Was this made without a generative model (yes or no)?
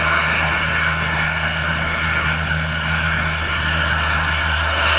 no